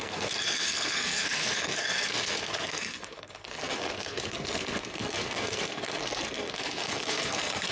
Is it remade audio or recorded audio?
remade